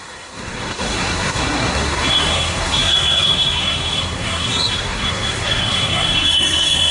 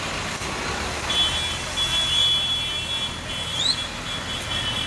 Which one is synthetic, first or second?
first